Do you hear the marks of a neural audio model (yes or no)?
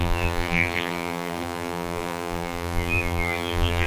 yes